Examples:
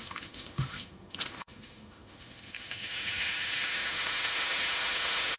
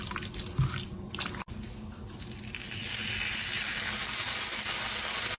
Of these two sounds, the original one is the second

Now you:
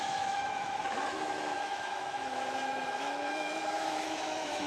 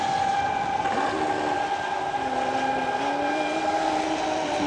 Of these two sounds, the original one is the second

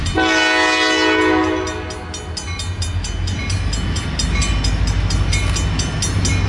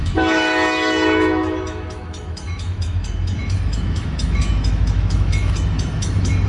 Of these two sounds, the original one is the first